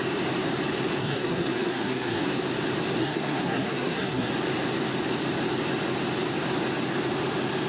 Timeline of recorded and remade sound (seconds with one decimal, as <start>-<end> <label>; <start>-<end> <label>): 0.0-1.0 recorded; 1.0-2.3 remade; 2.3-3.0 recorded; 3.0-4.3 remade; 4.3-7.7 recorded